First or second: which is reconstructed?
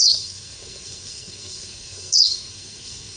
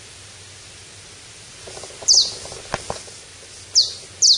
first